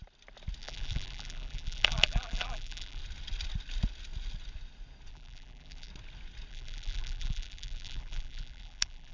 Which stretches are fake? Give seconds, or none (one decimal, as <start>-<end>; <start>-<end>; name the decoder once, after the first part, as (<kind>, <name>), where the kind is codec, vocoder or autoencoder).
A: 0.6-3.0 (vocoder, BigVGAN v2); 5.1-5.9; 6.5-9.1